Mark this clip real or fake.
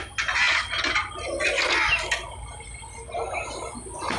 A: real